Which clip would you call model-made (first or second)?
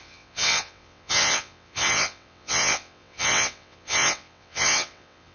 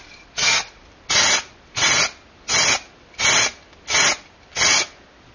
first